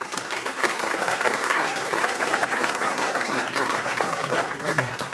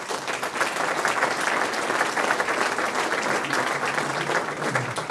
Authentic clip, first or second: second